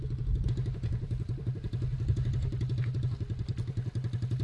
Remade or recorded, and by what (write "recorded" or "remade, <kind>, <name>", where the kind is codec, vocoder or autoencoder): recorded